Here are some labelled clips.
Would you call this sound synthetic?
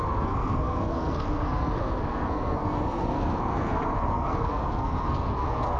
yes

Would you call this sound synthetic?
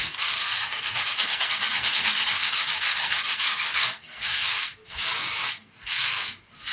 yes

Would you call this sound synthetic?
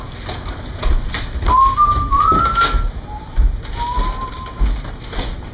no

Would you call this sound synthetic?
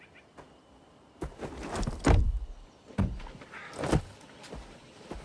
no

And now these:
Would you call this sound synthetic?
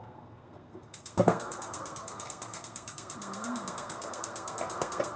yes